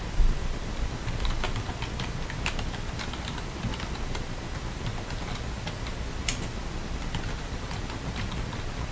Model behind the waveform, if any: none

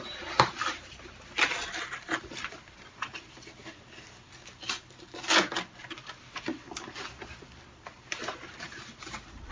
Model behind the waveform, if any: vocoder, BigVGAN v2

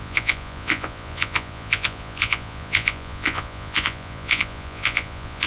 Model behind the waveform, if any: vocoder, Vocos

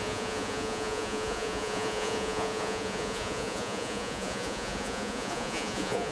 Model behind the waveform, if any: vocoder, Vocos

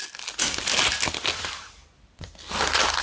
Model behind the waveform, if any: none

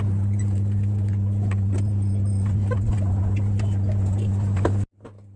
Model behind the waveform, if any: none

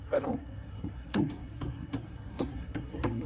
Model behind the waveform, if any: codec, SNAC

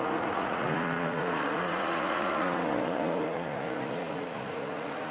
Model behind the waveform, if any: vocoder, Vocos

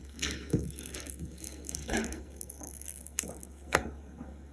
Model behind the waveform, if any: codec, SNAC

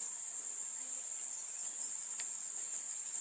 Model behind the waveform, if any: none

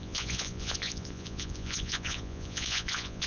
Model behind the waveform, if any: vocoder, Vocos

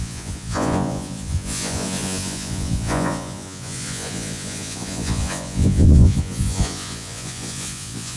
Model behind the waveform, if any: vocoder, Vocos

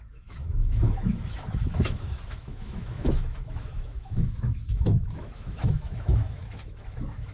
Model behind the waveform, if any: autoencoder, DAC-VAE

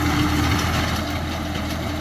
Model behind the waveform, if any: none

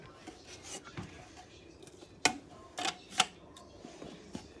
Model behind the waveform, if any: none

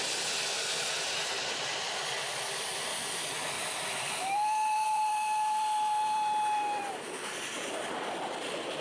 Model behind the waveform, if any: vocoder, BigVGAN v2